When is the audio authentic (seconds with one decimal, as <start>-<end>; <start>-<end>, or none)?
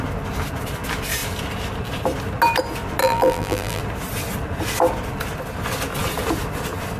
0.0-3.0; 3.8-7.0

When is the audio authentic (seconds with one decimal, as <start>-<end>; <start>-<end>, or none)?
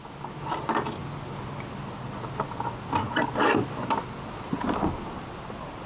0.0-5.9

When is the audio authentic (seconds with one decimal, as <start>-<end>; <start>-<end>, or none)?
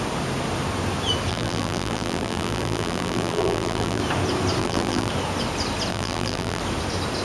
0.0-1.3; 4.0-4.6; 5.1-5.9; 6.6-7.2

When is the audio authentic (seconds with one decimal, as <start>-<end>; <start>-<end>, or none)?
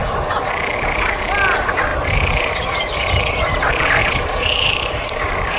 0.0-1.9; 3.1-4.0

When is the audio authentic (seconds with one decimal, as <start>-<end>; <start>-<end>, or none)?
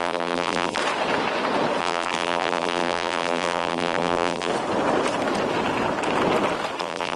0.8-1.8; 4.5-6.8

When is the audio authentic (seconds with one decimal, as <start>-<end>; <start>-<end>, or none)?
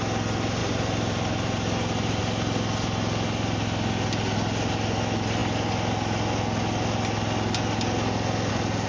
0.0-0.6; 2.2-8.9